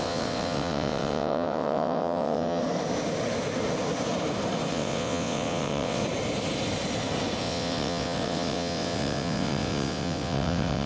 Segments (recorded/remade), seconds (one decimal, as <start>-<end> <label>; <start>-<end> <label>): 0.0-2.6 remade; 2.6-4.7 recorded; 4.7-6.0 remade; 6.0-7.4 recorded; 7.4-10.9 remade